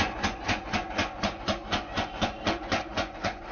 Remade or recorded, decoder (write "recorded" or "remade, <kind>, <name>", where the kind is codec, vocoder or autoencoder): remade, vocoder, Vocos